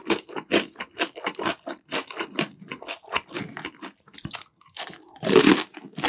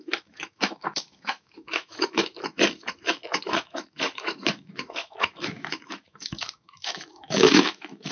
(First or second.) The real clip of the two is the first